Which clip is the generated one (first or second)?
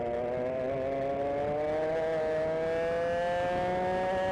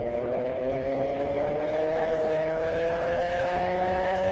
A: second